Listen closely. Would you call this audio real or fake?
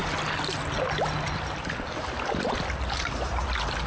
real